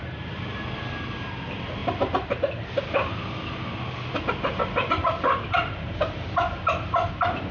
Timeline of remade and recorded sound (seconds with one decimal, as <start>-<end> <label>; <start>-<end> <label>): 0.0-4.6 recorded; 4.6-7.1 remade; 7.1-7.5 recorded